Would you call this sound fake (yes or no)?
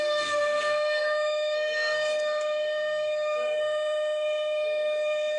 yes